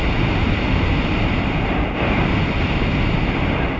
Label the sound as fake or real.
real